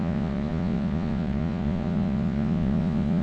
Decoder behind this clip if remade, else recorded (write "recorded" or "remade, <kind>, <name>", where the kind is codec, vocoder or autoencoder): remade, vocoder, Vocos